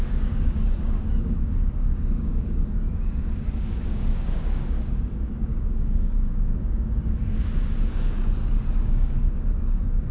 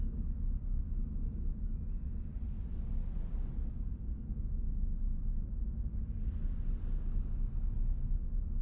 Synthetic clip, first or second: first